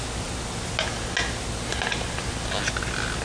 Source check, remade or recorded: recorded